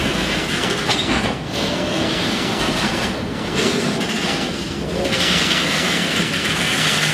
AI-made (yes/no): yes